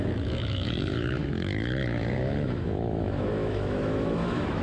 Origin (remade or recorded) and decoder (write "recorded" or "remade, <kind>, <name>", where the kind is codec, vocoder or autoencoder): remade, autoencoder, DAC-VAE